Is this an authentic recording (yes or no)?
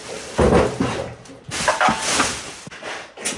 yes